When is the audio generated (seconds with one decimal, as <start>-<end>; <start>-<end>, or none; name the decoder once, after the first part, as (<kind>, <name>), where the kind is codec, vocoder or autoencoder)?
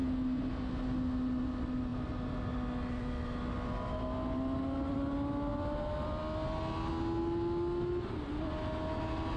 none